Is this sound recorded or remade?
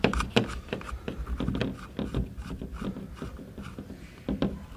recorded